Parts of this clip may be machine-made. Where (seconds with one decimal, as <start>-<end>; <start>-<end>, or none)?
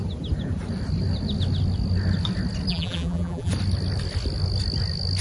2.7-3.5